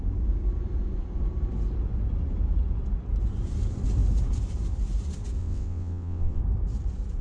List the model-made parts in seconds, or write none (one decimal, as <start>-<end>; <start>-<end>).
5.4-6.4